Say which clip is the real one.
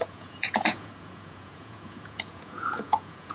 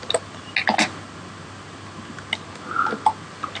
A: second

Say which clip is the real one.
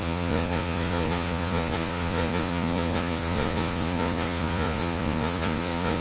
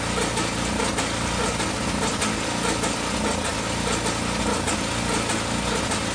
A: second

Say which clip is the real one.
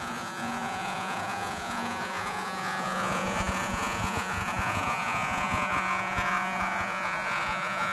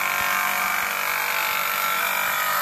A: second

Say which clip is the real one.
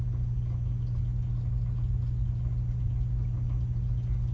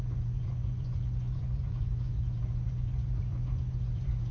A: first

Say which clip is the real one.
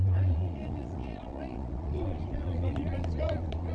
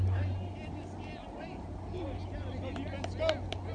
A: second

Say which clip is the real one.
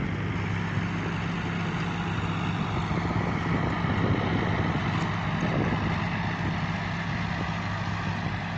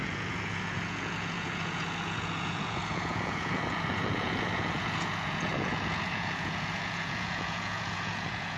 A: first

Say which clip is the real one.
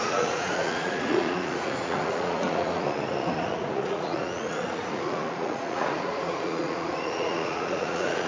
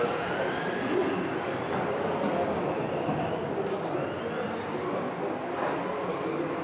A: second